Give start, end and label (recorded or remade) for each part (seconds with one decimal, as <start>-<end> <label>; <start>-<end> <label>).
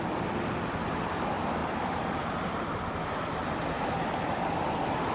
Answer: 0.0-1.6 recorded; 1.6-3.0 remade; 3.0-5.1 recorded